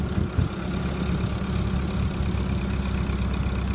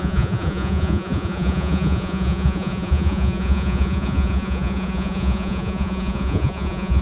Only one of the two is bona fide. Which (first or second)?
first